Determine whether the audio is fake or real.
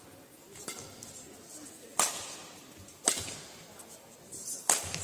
real